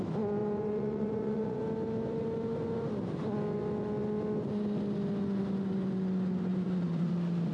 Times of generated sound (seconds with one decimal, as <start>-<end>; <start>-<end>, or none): 0.4-1.6; 6.5-7.1